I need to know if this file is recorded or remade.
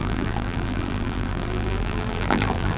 remade